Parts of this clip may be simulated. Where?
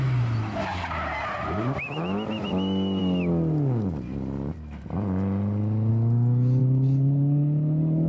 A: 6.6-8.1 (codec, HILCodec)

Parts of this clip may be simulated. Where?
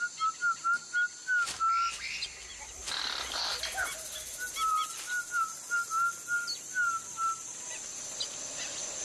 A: none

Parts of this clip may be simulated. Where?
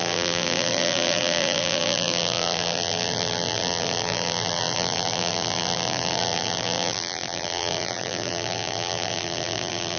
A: 0.0-10.0 (vocoder, BigVGAN v2)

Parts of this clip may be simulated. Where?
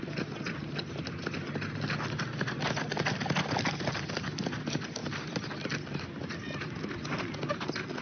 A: none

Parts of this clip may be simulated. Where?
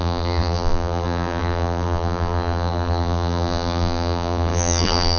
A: 0.0-5.2 (vocoder, BigVGAN v2)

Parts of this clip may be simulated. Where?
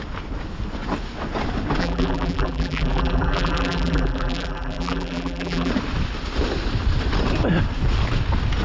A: 1.8-5.7 (vocoder, BigVGAN v2)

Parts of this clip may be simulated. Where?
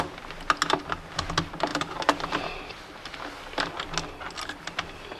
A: none